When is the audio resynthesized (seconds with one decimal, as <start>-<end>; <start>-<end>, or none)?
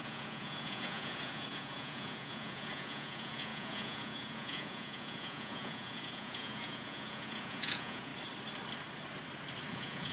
0.0-8.1; 9.7-10.1